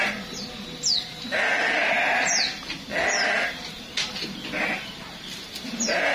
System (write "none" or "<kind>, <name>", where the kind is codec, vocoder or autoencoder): none